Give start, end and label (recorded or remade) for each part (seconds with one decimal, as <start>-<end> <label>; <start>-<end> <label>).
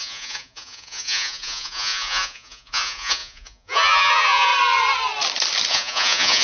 0.0-4.5 remade; 4.5-5.7 recorded; 5.7-6.4 remade